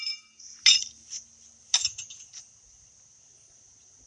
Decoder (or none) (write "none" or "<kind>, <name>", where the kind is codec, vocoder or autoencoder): none